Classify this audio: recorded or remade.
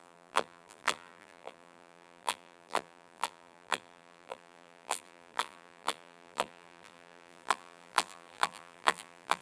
remade